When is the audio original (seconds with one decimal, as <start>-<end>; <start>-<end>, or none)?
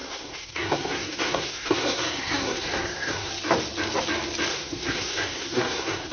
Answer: 3.3-4.5